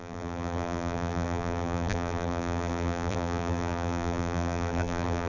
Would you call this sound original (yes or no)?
no